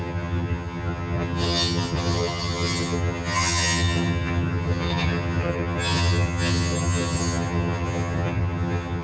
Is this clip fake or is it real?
fake